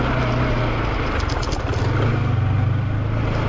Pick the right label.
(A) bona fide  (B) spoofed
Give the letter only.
A